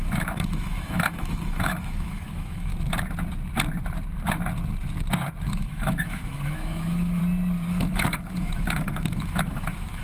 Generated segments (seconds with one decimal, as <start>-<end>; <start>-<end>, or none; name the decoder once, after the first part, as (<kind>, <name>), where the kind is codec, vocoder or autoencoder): 0.0-2.7 (autoencoder, DAC-VAE); 5.5-7.2; 7.7-10.0